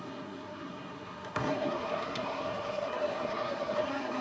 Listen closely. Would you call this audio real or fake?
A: fake